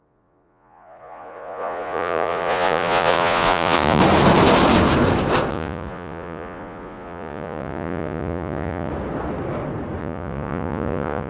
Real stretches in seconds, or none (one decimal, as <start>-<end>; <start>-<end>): 4.0-5.5; 8.9-10.0